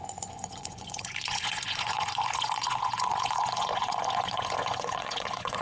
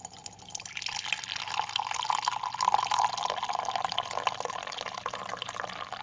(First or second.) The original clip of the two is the second